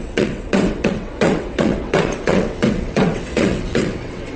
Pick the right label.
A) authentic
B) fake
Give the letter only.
B